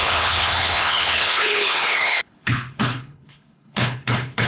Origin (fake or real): fake